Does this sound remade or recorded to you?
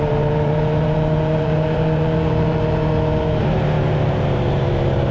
remade